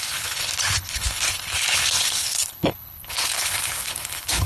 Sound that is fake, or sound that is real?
fake